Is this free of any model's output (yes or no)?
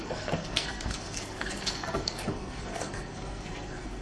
no